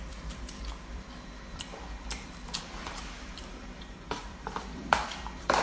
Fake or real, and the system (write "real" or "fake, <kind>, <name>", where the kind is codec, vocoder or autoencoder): fake, vocoder, BigVGAN v2